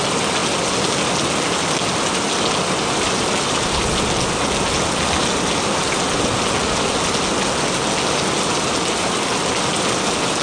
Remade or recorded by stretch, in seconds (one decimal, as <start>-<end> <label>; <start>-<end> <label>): 0.0-10.4 recorded